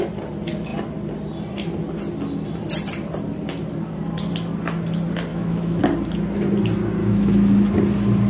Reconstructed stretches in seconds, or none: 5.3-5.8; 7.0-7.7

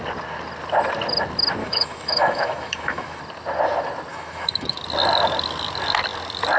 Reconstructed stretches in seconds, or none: 1.6-3.2; 4.1-4.8

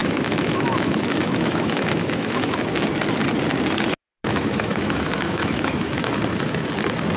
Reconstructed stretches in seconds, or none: 0.0-2.6; 4.2-6.2

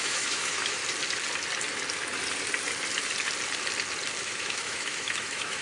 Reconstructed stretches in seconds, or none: 0.0-0.8; 4.2-5.6

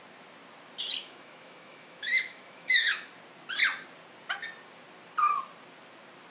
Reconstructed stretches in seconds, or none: 1.0-3.1

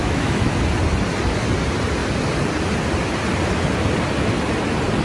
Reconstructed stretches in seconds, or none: 0.0-0.5

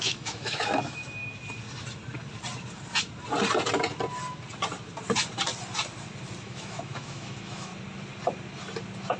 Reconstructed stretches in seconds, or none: 0.0-1.2; 6.4-7.7

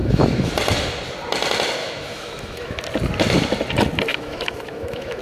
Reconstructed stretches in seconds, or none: 0.0-0.5; 1.8-2.8; 4.1-5.2